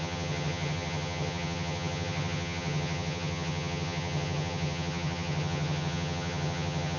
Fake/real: fake